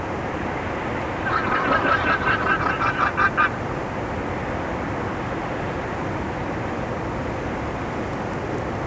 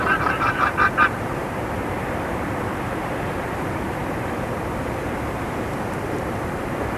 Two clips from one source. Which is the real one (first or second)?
first